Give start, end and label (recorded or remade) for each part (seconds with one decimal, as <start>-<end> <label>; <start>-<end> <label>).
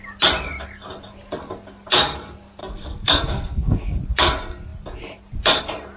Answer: 0.0-2.6 recorded; 2.6-4.0 remade; 4.0-6.0 recorded